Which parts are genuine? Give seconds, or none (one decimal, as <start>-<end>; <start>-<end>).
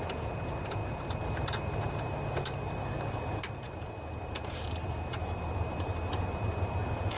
none